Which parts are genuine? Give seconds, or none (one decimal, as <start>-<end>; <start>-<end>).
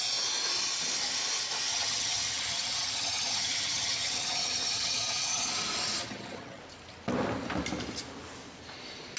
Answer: 0.0-1.7; 5.5-6.0; 6.6-9.2